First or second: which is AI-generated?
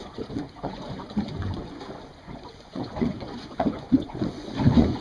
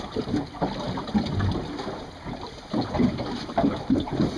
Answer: first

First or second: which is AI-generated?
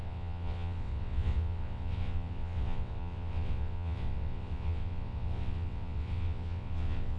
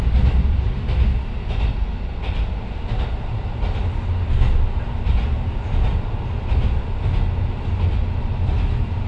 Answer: first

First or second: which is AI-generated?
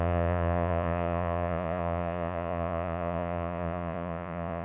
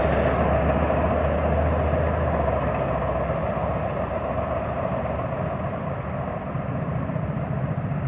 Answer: first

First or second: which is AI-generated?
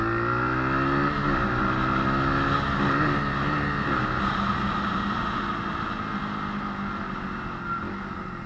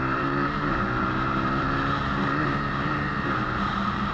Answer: second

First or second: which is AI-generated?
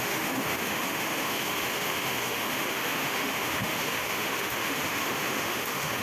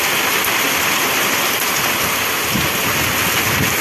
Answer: first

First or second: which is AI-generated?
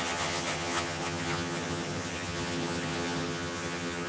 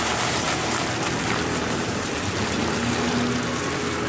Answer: first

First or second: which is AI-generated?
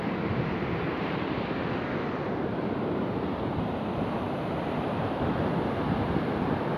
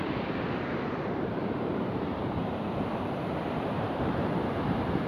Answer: second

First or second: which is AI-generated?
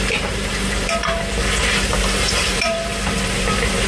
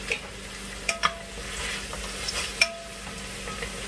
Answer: first